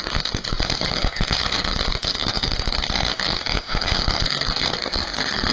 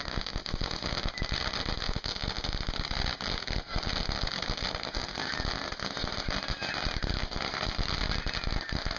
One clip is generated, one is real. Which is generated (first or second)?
first